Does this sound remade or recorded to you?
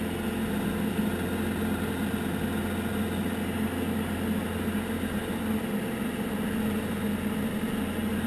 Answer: recorded